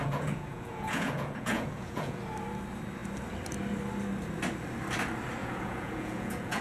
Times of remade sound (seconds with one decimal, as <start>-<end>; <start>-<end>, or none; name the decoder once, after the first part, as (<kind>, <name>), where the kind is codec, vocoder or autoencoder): 0.0-2.2 (vocoder, Vocos); 5.4-6.6